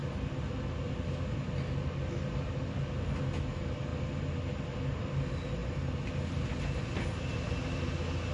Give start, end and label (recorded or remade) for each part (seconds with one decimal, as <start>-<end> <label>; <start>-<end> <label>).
0.0-8.3 recorded